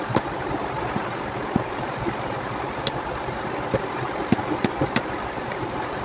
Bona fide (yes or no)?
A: no